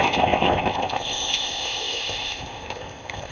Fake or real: fake